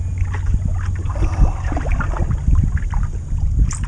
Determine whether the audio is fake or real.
real